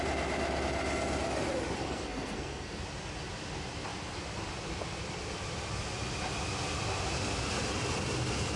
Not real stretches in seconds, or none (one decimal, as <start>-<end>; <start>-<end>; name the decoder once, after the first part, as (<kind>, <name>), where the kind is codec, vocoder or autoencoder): 1.8-2.8 (codec, SNAC)